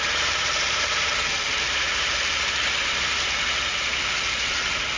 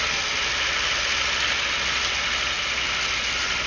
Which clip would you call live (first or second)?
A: second